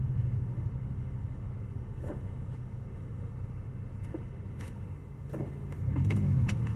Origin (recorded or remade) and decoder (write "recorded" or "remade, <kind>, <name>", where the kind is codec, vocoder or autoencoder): remade, autoencoder, DAC-VAE